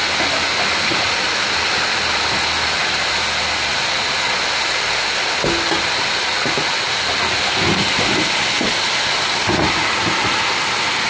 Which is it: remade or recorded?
recorded